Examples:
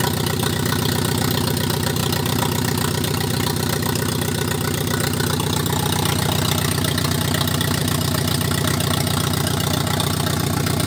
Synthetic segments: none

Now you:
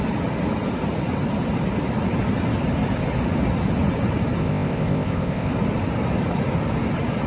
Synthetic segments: 4.4-5.5

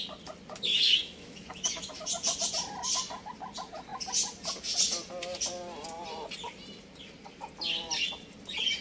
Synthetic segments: 0.7-1.9

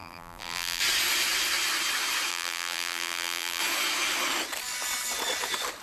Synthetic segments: 0.0-0.8; 2.3-3.6

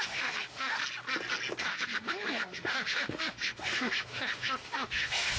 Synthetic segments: 0.0-0.8; 1.6-5.4

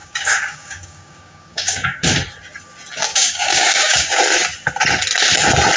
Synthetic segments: 0.0-2.0; 3.1-4.2

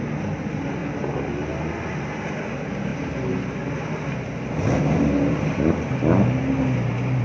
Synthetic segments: none